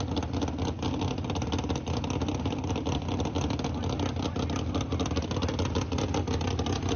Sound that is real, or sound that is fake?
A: real